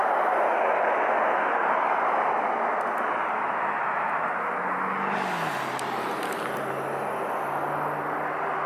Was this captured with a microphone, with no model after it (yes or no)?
yes